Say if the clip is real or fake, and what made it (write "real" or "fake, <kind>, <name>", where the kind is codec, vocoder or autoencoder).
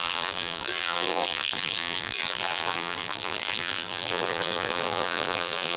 fake, vocoder, BigVGAN v2